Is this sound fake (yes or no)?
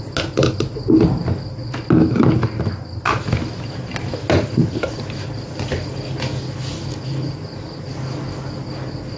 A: no